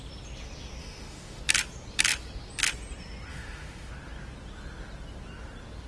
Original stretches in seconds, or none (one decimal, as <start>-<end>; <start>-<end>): 0.0-0.8; 1.4-3.3; 3.9-5.9